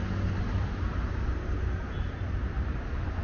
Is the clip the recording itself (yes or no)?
yes